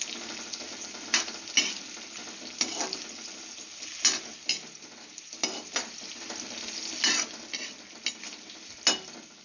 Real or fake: real